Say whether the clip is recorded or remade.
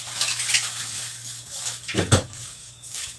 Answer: remade